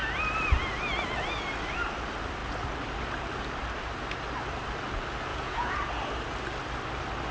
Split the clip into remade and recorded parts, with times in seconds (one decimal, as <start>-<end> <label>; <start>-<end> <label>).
0.0-5.3 recorded; 5.3-5.9 remade; 5.9-7.3 recorded